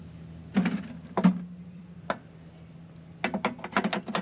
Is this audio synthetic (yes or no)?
no